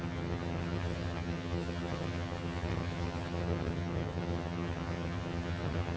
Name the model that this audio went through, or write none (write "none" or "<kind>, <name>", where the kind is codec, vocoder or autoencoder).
vocoder, HiFi-GAN